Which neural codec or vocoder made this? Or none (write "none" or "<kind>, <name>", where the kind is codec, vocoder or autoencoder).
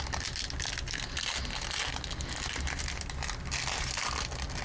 none